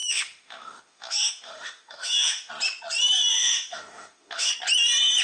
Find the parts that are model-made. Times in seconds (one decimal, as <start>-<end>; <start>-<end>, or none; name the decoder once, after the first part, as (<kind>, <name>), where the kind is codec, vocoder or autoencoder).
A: 0.0-2.5 (autoencoder, DAC-VAE); 3.3-4.5